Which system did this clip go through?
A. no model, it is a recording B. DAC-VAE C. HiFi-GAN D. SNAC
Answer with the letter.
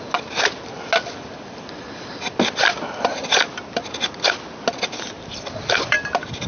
A